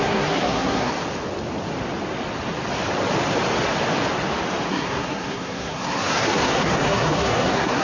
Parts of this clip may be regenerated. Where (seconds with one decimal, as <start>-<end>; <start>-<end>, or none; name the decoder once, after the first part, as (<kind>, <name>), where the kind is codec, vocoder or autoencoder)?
0.0-0.9 (codec, SNAC); 4.7-7.8